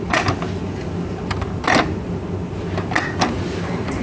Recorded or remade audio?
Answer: recorded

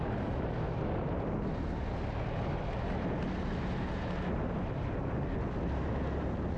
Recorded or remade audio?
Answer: recorded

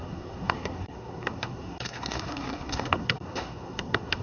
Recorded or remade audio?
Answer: remade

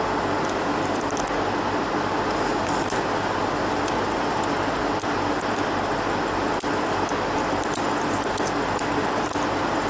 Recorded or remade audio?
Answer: recorded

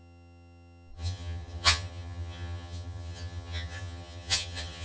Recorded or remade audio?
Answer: remade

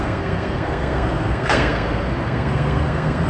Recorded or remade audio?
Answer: remade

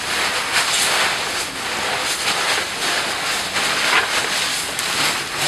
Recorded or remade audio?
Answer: recorded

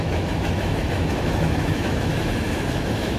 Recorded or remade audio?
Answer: remade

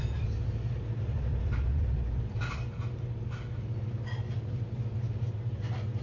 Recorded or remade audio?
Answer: recorded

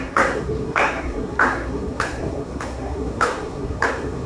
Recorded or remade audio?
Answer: remade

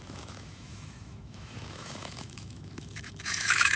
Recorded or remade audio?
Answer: remade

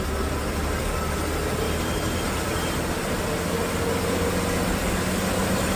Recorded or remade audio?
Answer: recorded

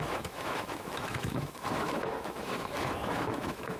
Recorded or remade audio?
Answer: remade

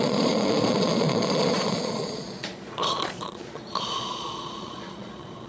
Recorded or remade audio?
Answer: remade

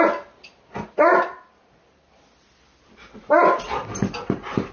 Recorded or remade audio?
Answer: recorded